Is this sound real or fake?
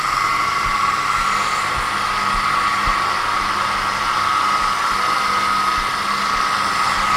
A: real